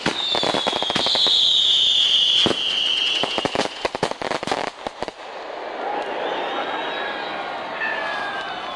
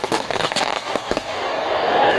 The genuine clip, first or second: first